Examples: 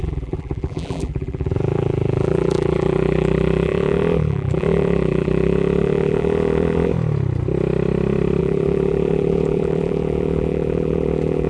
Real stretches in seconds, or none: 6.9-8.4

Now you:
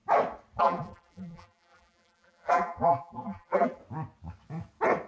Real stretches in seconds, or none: 0.0-0.6; 3.8-5.1

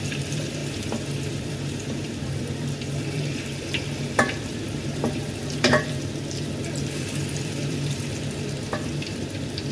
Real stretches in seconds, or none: 0.6-1.3

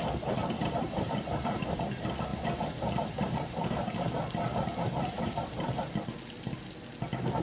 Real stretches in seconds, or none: 0.0-0.4; 1.6-2.3; 5.9-7.4